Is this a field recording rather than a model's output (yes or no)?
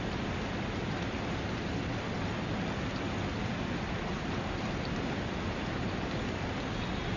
yes